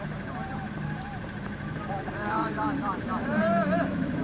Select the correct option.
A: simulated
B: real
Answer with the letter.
A